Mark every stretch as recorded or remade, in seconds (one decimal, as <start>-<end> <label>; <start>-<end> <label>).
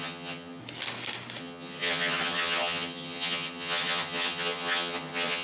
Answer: 0.0-0.6 remade; 0.6-1.4 recorded; 1.4-5.4 remade